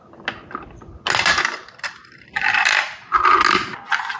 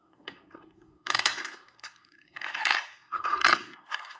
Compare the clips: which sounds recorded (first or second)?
first